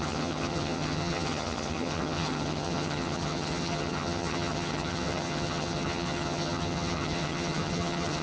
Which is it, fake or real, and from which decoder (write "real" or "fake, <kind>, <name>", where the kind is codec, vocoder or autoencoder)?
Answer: fake, vocoder, HiFi-GAN